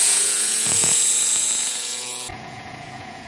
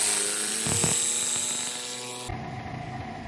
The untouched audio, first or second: second